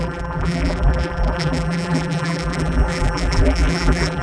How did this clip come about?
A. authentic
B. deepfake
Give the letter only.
B